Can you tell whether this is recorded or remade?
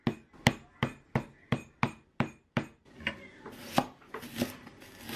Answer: recorded